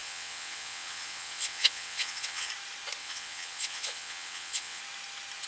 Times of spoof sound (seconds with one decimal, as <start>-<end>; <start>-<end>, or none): 0.0-2.5; 3.0-4.8